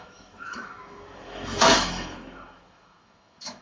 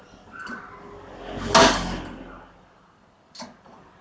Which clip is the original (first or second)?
second